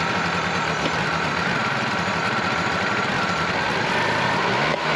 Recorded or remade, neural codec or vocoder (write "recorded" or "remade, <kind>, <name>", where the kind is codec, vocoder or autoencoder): recorded